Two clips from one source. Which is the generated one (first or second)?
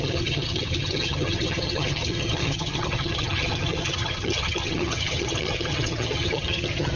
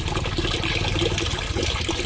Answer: first